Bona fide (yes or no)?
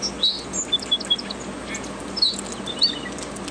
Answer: yes